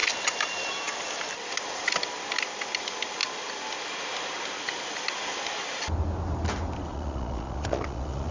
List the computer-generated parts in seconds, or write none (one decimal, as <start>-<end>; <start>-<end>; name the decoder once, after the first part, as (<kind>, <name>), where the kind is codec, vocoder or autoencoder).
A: 6.9-8.3 (vocoder, Vocos)